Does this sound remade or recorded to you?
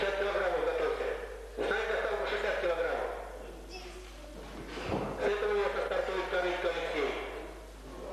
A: recorded